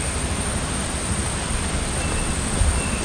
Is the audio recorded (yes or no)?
yes